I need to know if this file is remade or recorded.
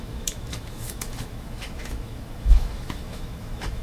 remade